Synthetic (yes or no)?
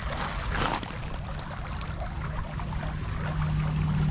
no